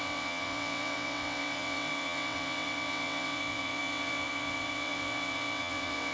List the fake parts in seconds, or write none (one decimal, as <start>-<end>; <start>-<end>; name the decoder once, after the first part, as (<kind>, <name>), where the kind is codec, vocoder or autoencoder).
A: 0.0-6.1 (vocoder, WaveNeXt)